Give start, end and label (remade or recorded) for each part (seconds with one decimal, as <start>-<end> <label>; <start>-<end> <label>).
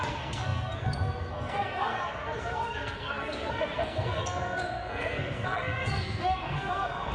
0.0-7.1 remade